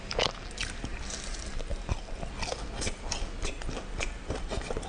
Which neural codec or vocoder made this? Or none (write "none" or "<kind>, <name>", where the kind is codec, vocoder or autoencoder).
none